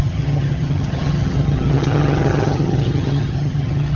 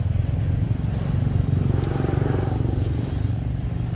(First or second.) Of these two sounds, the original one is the second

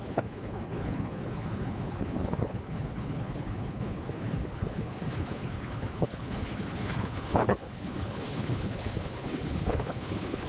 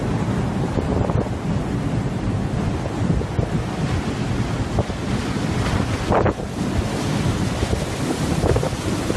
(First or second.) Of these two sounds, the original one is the second